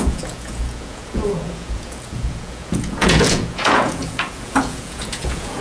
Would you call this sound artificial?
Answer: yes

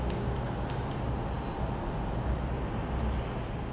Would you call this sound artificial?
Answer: no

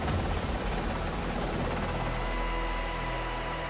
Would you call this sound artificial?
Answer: no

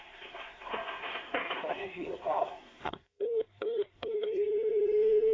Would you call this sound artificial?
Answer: yes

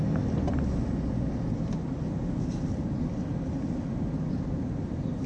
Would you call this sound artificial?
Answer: no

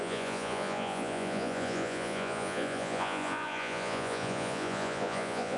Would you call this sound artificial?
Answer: yes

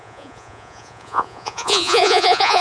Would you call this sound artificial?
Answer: yes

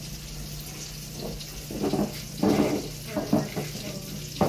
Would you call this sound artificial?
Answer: no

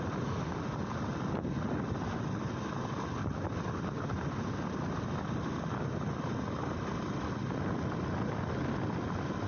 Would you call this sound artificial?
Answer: no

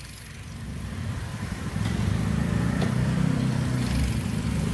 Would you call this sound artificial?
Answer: yes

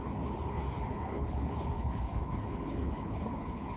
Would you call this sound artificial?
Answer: yes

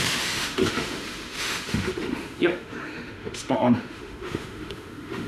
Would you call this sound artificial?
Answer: yes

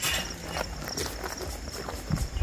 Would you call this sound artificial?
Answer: no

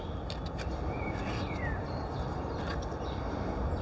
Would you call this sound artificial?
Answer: no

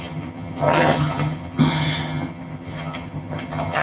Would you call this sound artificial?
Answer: yes